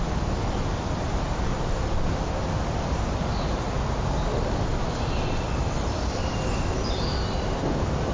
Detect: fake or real real